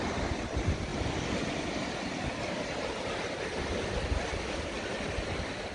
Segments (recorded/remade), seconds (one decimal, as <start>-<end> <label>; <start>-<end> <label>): 0.0-5.7 recorded